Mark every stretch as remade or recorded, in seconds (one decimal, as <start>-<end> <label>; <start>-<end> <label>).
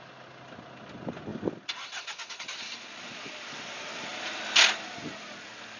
0.0-5.8 recorded